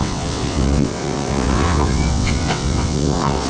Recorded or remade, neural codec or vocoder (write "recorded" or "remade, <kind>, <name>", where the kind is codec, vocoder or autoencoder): remade, vocoder, WaveNeXt